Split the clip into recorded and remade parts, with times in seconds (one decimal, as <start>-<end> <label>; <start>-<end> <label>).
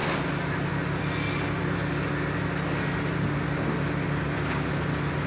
0.0-5.3 recorded